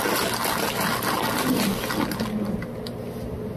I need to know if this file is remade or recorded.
recorded